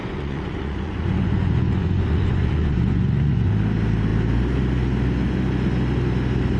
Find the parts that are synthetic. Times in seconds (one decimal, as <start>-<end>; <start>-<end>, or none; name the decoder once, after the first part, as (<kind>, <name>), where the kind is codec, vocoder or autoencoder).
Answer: 0.0-3.5 (vocoder, Vocos)